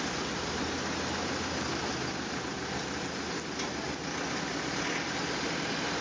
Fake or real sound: real